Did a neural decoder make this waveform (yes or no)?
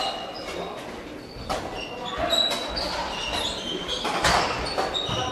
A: no